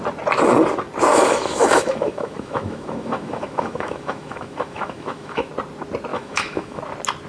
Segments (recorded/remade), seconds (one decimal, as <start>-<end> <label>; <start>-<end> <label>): 0.0-1.1 recorded; 1.1-5.5 remade; 5.5-6.1 recorded; 6.1-6.8 remade; 6.8-7.3 recorded